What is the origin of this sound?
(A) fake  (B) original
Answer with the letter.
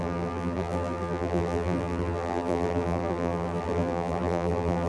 A